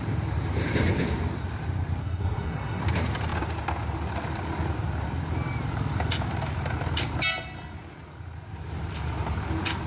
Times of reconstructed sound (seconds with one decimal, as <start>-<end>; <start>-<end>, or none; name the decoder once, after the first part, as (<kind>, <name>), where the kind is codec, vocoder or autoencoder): 2.0-2.8 (codec, SNAC)